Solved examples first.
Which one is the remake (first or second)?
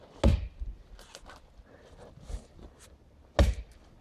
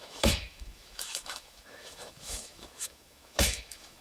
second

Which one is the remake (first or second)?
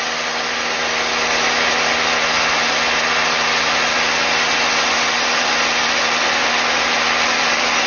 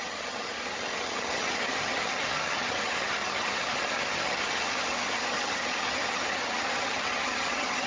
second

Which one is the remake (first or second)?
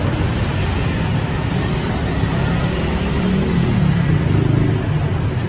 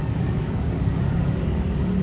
second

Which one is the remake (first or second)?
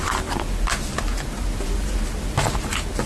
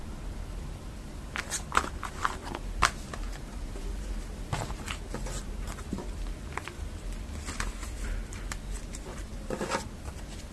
second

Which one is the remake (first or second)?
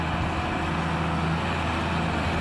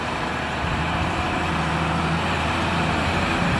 second